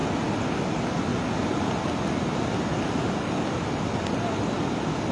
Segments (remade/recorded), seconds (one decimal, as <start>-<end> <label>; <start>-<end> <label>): 0.0-5.1 recorded